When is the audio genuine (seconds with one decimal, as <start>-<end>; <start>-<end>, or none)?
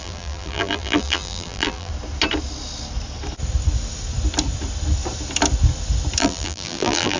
1.9-6.2